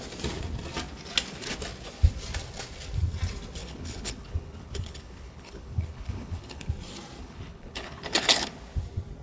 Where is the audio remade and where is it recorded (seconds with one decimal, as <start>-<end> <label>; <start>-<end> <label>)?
0.0-3.6 recorded; 3.6-6.7 remade; 6.7-7.2 recorded; 7.2-8.5 remade; 8.5-9.2 recorded